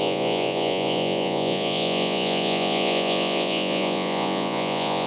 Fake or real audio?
fake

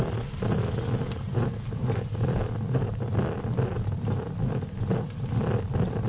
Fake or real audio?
real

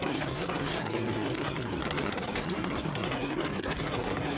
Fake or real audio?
fake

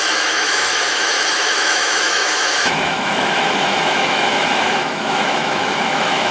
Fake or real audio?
fake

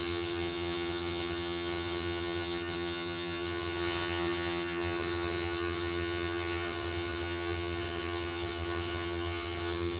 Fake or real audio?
fake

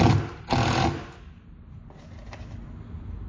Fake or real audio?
real